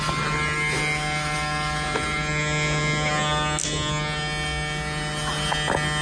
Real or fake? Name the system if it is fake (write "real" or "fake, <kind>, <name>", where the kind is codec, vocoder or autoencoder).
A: real